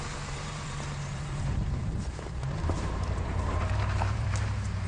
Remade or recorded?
remade